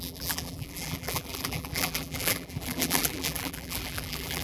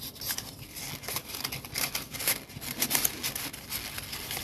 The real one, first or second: second